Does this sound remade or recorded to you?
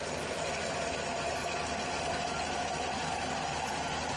recorded